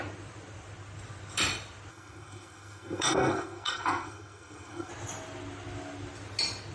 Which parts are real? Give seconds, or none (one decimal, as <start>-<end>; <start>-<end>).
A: 0.0-1.9; 4.9-6.7